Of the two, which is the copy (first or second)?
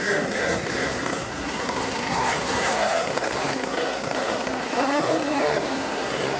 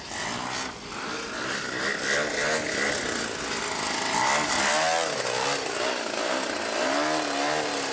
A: first